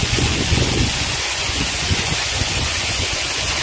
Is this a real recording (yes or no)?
no